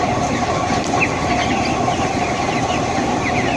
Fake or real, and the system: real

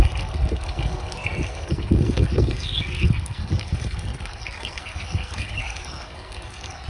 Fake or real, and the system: fake, codec, SNAC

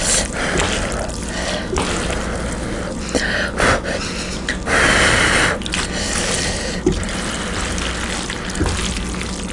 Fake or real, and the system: real